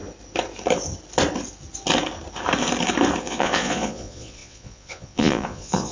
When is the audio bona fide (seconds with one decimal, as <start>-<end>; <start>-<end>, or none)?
0.0-3.2